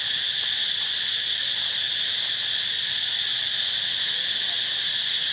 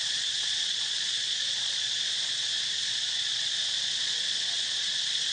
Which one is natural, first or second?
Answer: first